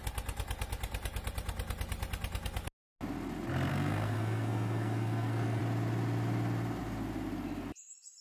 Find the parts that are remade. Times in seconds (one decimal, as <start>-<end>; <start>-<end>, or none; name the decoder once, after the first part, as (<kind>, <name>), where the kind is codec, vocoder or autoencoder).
3.7-5.6 (codec, SNAC)